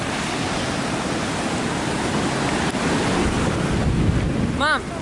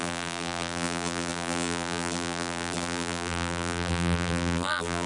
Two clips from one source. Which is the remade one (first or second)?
second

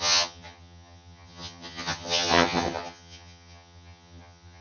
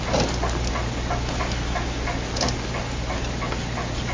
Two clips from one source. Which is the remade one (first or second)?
first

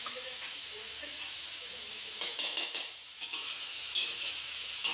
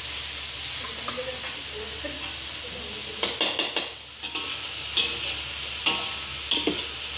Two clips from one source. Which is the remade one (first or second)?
first